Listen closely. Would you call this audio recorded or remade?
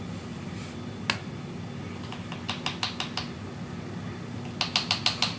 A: recorded